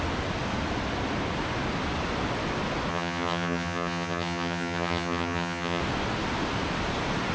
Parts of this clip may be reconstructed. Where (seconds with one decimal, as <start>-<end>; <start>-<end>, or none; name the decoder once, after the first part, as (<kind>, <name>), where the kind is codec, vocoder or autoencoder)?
2.9-5.8 (vocoder, HiFi-GAN)